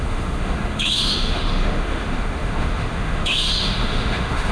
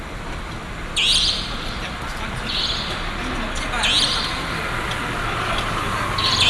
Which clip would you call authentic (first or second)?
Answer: second